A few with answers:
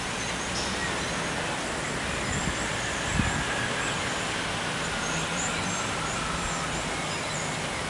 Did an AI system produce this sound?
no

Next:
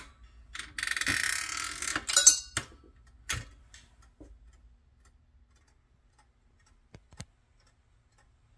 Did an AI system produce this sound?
no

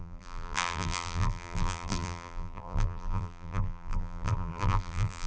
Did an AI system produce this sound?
yes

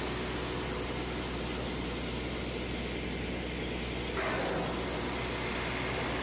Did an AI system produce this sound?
no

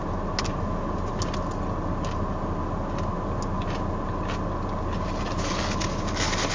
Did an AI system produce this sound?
no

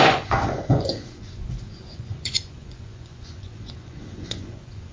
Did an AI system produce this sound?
yes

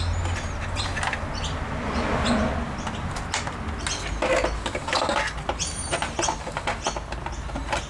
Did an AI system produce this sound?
no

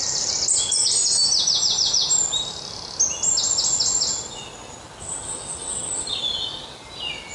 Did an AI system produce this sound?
no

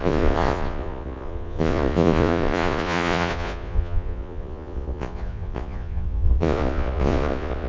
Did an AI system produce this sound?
yes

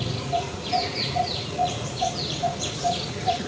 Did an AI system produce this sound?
yes